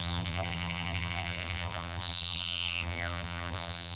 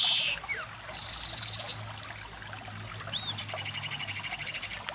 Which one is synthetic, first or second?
first